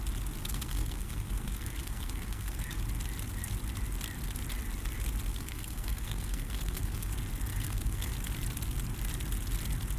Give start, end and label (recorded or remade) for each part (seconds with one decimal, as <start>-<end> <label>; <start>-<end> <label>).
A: 0.0-0.4 recorded; 0.4-2.8 remade; 2.8-5.3 recorded; 5.3-7.1 remade; 7.1-7.5 recorded; 7.5-8.1 remade; 8.1-10.0 recorded